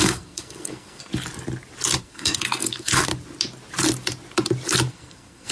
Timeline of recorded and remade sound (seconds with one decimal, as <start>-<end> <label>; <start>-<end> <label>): 0.0-1.1 remade; 1.1-2.0 recorded; 2.0-3.1 remade; 3.1-4.9 recorded; 4.9-5.5 remade